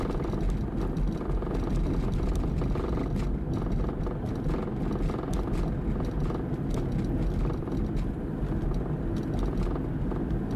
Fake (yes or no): no